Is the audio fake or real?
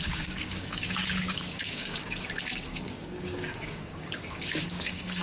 fake